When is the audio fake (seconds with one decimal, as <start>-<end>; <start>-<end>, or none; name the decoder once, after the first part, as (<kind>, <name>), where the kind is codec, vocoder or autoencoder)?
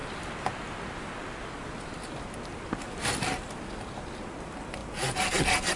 0.0-3.5 (vocoder, BigVGAN v2)